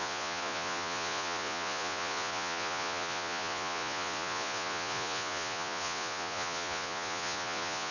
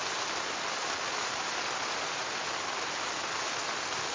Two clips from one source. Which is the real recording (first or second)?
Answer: second